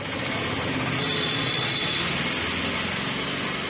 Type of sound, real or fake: real